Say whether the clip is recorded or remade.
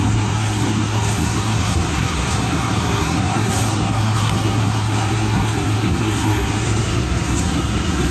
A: remade